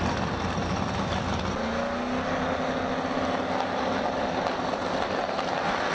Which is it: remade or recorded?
recorded